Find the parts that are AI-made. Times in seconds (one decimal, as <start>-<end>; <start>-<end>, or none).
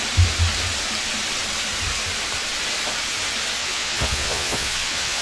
3.6-5.2